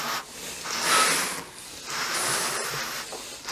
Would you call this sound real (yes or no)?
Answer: yes